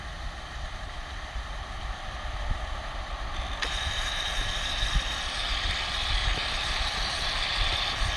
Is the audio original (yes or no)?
no